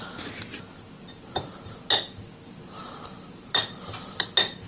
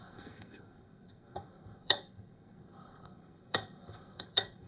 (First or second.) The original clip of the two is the first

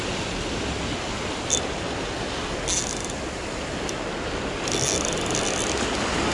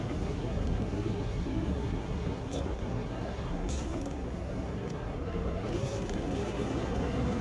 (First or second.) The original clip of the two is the first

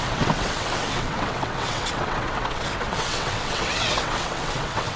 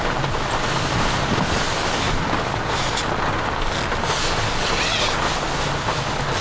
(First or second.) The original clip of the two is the second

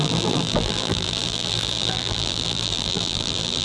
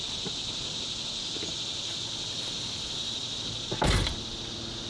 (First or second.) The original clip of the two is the second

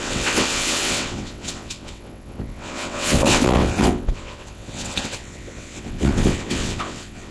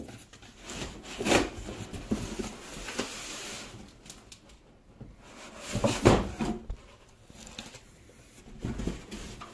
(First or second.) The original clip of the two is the second